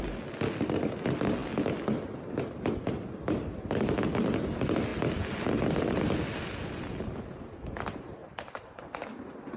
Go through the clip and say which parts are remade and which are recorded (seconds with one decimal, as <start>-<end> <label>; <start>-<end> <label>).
0.0-8.2 recorded; 8.2-8.8 remade; 8.8-9.6 recorded